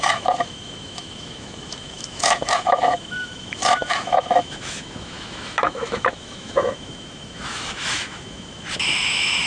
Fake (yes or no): yes